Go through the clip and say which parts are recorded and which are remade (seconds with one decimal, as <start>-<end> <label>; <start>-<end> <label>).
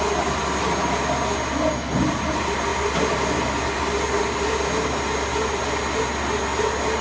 0.0-7.0 recorded